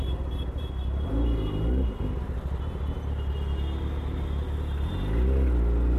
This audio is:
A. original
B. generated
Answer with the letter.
A